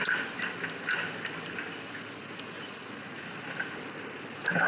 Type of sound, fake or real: real